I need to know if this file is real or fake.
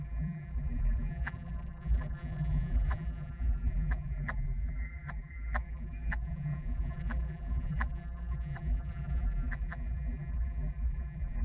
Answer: fake